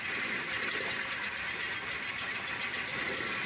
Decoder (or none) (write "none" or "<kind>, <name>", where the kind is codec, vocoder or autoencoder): none